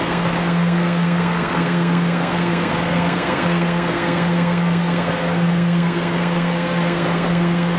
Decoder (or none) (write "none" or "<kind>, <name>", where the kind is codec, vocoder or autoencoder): codec, SNAC